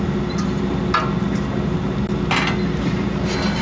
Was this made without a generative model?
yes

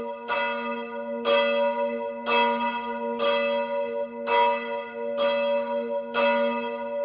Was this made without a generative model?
yes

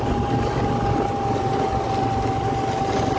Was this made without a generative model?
yes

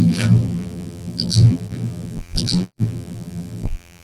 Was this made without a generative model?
no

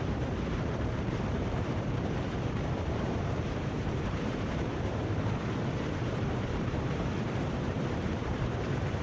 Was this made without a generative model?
no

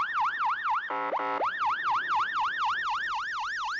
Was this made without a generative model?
yes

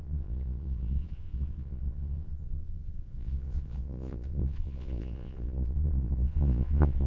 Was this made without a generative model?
no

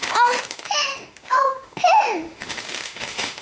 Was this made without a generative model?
no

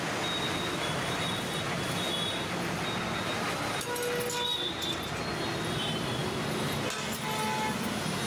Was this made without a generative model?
yes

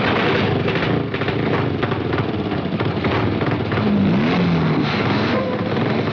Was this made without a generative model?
yes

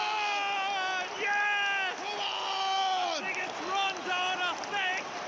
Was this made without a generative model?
yes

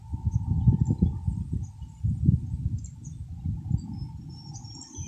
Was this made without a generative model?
yes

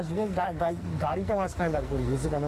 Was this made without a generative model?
no